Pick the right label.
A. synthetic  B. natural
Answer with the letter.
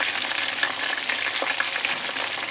B